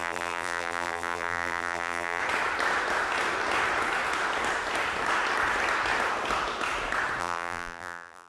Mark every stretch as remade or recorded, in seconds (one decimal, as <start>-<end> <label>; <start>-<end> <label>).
0.0-2.2 remade; 2.2-7.2 recorded; 7.2-8.3 remade